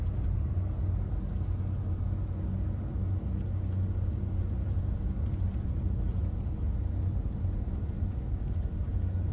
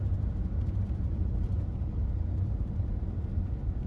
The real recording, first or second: first